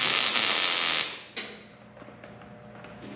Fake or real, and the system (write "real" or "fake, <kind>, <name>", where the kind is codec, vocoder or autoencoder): real